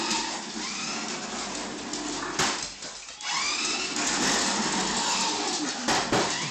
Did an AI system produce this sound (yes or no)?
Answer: no